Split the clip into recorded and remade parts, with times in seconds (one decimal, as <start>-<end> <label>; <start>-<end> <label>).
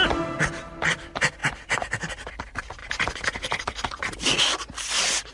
0.0-5.3 recorded